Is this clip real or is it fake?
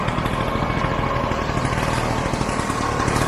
real